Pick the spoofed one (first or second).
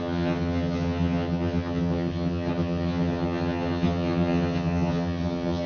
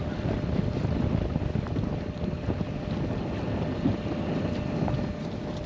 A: first